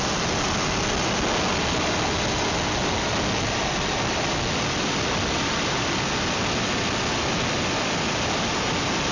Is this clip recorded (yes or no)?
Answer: yes